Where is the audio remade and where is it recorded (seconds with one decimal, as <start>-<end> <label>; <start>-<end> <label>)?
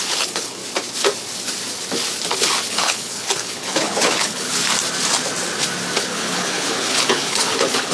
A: 0.0-0.6 remade; 0.6-2.7 recorded; 2.7-4.6 remade; 4.6-6.0 recorded; 6.0-7.9 remade